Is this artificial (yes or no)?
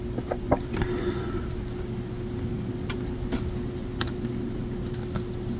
no